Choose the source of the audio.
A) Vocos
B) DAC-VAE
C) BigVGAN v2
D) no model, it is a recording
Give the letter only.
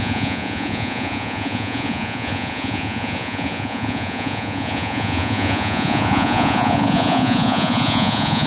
A